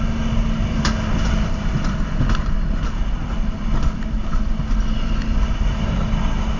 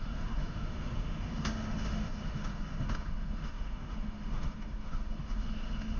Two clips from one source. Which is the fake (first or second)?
second